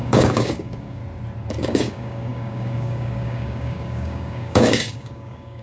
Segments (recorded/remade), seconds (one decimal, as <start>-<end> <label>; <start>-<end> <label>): 0.0-1.0 remade; 1.0-1.5 recorded; 1.5-5.6 remade